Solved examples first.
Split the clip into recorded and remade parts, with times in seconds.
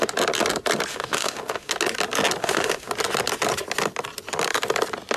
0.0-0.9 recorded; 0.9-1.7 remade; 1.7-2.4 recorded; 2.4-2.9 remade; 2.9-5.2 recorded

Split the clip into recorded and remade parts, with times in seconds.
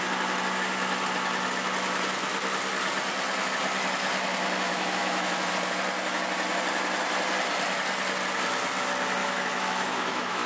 0.0-4.7 recorded; 4.7-5.5 remade; 5.5-9.2 recorded; 9.2-10.5 remade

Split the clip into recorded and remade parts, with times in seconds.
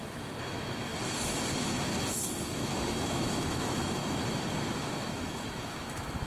0.0-0.9 remade; 0.9-2.4 recorded; 2.4-4.0 remade; 4.0-4.8 recorded; 4.8-6.3 remade